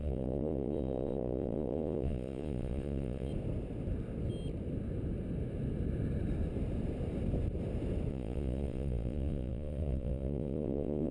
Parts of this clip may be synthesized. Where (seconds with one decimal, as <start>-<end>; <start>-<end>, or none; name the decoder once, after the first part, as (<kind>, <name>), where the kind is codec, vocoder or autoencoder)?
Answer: 0.0-3.3 (vocoder, Vocos); 8.1-11.1